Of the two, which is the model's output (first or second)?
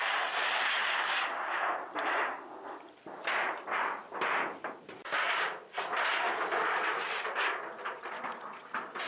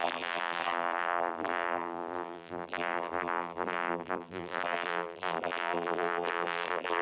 second